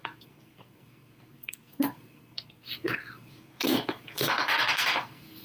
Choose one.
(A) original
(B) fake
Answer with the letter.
B